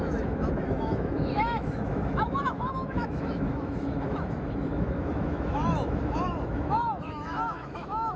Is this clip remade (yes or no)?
yes